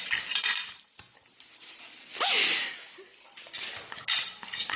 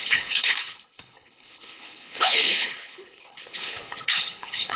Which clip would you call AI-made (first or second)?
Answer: second